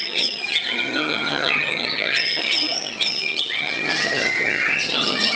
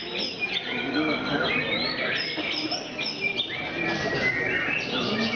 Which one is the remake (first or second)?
first